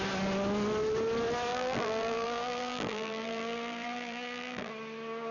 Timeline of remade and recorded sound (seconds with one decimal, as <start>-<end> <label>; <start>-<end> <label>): 0.0-1.5 recorded; 1.5-4.7 remade; 4.7-5.3 recorded